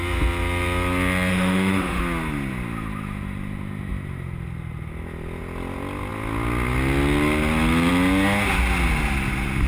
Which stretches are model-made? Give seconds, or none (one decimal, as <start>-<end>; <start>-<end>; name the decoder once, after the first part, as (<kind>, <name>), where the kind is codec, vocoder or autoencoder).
1.3-2.0 (autoencoder, DAC-VAE)